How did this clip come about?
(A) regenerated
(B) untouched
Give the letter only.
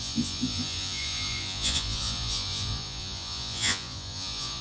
A